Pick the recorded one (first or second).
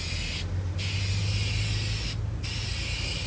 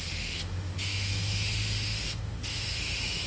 first